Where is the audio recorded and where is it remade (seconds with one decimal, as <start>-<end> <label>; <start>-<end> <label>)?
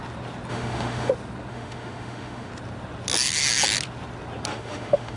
0.0-0.5 recorded; 0.5-1.1 remade; 1.1-1.5 recorded; 1.5-2.5 remade; 2.5-4.5 recorded; 4.5-5.2 remade